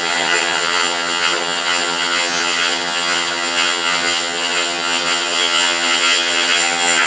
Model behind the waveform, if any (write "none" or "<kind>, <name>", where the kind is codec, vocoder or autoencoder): vocoder, HiFi-GAN